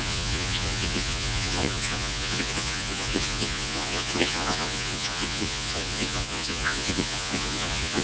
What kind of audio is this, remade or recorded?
remade